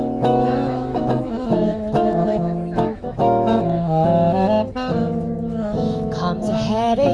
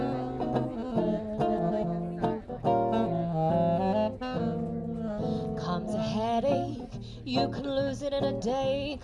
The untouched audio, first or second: second